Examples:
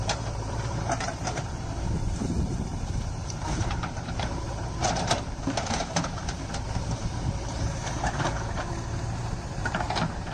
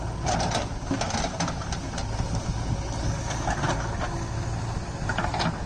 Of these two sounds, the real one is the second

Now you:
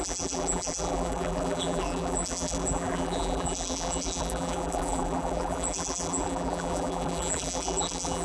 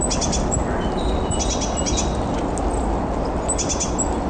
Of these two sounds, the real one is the second